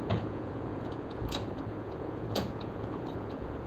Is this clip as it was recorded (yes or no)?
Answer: no